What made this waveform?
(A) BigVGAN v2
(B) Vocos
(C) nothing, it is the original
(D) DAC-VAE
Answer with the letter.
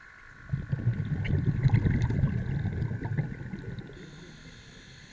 C